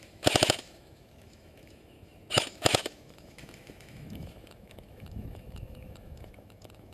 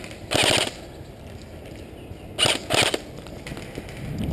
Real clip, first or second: second